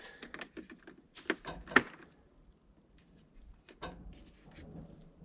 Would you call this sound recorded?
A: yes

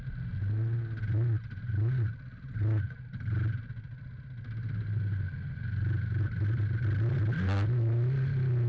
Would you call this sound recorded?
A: yes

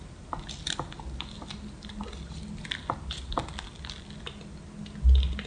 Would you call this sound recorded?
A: yes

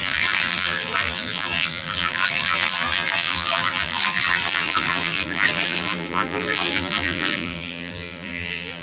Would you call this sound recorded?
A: no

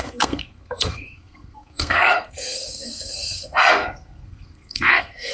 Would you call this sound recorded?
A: no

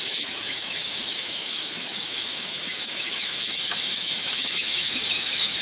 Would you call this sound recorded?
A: no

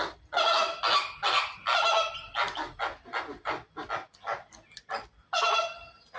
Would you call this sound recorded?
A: yes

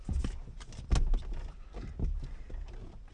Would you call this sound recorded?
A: yes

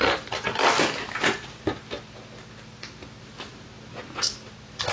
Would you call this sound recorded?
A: yes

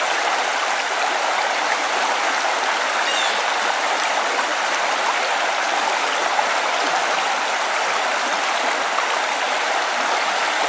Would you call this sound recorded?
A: yes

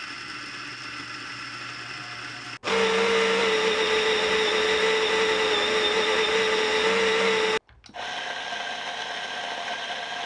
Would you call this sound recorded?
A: yes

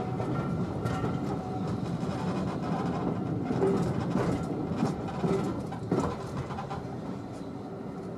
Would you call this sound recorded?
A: yes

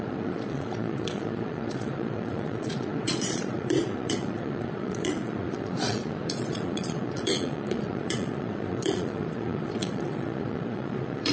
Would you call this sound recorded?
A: no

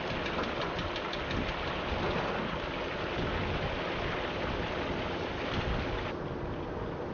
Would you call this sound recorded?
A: yes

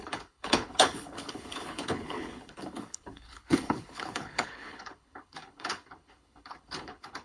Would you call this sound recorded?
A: no